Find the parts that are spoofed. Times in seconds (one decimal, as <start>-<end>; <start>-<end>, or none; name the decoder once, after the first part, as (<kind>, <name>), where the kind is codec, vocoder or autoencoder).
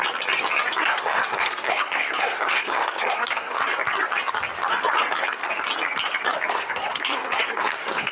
0.8-3.6 (codec, SNAC); 6.5-8.1